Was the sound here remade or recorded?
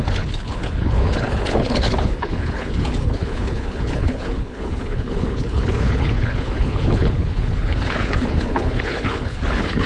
remade